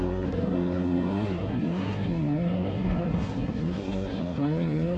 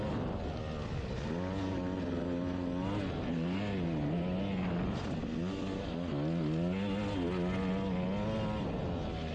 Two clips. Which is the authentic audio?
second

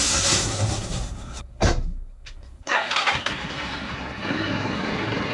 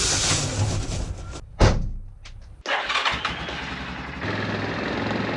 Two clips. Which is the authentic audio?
second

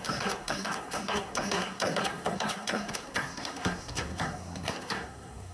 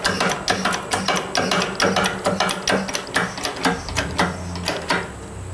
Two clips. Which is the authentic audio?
second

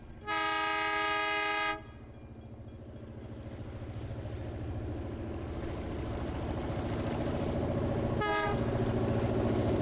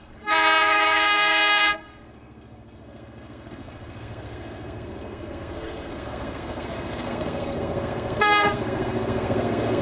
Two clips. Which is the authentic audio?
first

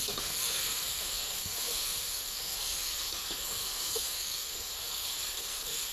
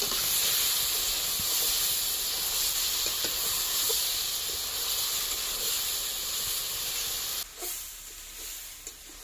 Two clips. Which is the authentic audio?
second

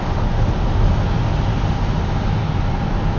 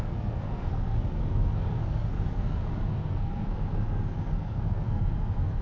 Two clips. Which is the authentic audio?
first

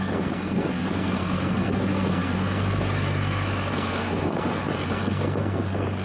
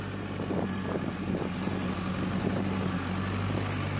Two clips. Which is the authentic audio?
second